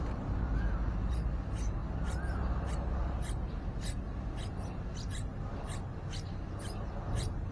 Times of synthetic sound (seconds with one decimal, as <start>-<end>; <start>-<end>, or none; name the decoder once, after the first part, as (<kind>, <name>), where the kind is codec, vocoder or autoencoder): 0.0-1.8 (vocoder, BigVGAN v2); 6.3-7.5